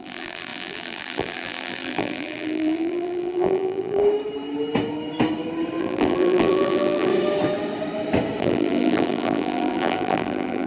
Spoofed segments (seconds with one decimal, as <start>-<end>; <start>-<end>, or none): 0.0-4.0; 5.8-7.1; 8.4-10.7